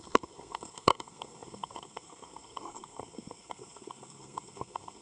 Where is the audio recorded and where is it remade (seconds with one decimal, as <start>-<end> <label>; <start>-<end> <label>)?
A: 0.0-5.0 remade